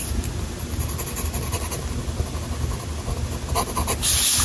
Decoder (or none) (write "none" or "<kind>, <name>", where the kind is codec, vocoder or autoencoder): none